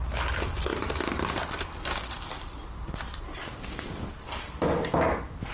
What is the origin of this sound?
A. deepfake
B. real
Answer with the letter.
A